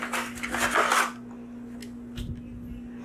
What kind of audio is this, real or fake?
real